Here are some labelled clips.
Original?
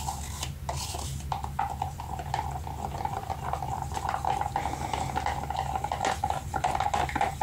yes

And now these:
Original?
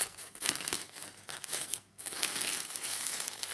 no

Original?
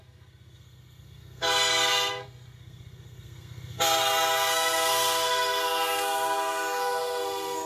no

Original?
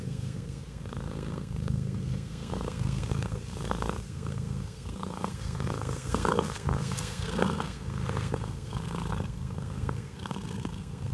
no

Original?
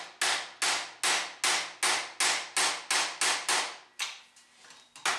yes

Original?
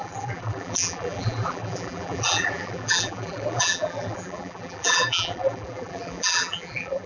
no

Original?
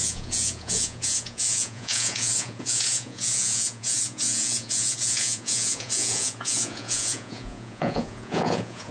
no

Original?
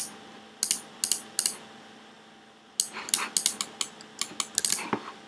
yes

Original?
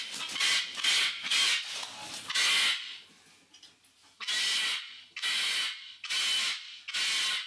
yes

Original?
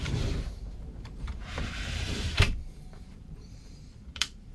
no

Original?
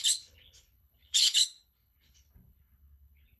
no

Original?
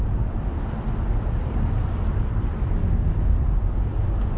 yes